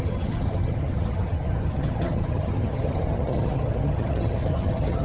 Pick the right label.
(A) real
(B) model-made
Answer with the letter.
B